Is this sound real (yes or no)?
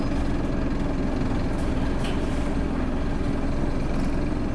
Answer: yes